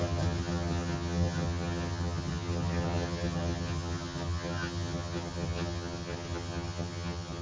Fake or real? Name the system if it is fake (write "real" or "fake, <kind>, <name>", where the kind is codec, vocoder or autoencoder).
fake, vocoder, HiFi-GAN